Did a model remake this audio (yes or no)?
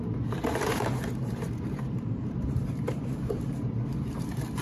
yes